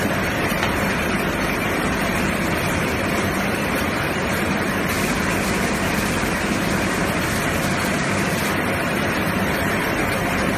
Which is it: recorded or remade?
remade